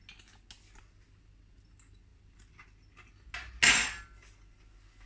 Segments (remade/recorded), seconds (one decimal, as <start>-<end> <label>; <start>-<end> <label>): 0.0-5.1 recorded